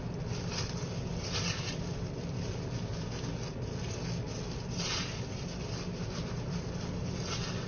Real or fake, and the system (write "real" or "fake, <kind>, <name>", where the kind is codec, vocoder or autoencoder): real